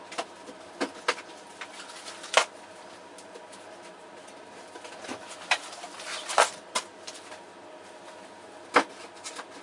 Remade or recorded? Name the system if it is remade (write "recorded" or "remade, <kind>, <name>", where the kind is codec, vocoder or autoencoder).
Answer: recorded